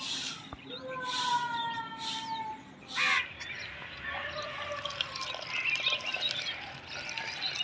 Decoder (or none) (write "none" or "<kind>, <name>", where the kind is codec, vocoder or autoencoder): none